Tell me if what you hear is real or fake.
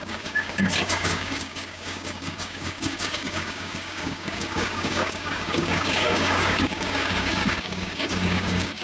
fake